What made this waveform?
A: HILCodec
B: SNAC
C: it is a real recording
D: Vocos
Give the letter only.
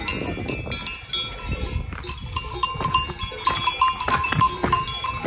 C